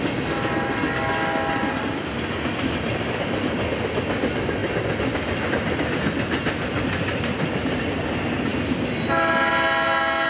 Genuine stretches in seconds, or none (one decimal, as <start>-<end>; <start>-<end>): 0.0-10.3